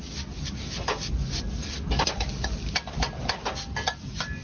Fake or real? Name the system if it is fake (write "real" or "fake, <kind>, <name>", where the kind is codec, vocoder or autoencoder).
real